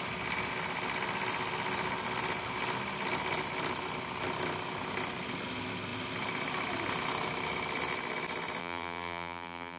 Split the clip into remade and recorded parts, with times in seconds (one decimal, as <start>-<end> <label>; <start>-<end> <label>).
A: 0.0-8.6 recorded; 8.6-9.8 remade

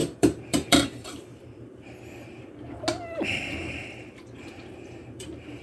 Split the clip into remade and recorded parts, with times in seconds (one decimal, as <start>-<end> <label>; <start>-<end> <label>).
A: 0.0-2.6 remade; 2.6-3.6 recorded; 3.6-5.6 remade

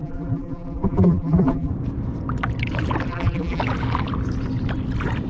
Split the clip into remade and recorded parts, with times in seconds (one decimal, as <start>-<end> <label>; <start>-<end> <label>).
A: 0.0-1.7 remade; 1.7-3.1 recorded; 3.1-3.6 remade; 3.6-5.3 recorded

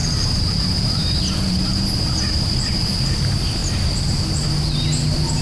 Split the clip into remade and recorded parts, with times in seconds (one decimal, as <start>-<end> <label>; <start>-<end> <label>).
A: 0.0-3.2 remade; 3.2-5.4 recorded

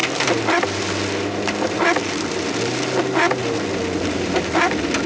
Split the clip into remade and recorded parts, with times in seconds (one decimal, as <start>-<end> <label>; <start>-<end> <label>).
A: 0.0-0.8 remade; 0.8-5.1 recorded

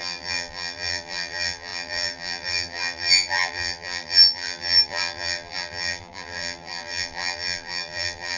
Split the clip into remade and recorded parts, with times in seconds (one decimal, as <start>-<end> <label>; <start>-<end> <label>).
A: 0.0-8.4 remade

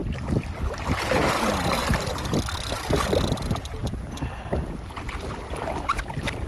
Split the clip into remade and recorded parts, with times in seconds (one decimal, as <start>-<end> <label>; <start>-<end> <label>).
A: 0.0-1.7 recorded; 1.7-6.5 remade